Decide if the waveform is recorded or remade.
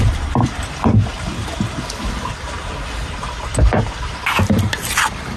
recorded